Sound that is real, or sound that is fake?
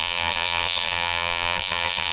fake